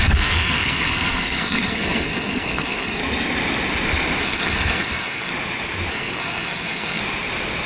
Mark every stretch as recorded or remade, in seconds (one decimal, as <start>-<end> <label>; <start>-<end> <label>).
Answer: 0.0-3.0 remade; 3.0-4.2 recorded; 4.2-5.3 remade; 5.3-5.9 recorded; 5.9-7.0 remade; 7.0-7.7 recorded